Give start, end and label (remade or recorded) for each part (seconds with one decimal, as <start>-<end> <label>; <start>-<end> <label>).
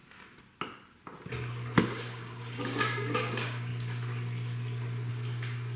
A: 0.0-1.8 recorded; 1.8-3.7 remade; 3.7-5.1 recorded; 5.1-5.8 remade